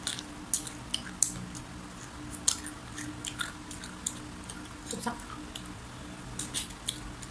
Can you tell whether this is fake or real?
real